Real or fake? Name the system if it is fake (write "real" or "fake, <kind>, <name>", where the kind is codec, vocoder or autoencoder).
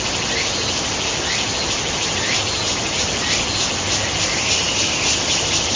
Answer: real